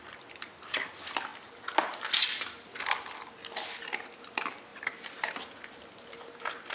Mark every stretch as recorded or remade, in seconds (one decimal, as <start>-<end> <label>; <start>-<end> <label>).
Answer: 0.0-1.3 remade; 1.3-2.8 recorded; 2.8-6.7 remade